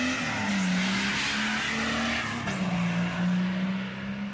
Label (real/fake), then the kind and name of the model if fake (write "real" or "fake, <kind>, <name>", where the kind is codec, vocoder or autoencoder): real